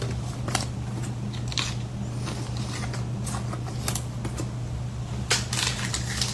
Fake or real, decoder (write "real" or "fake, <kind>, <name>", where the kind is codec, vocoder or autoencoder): real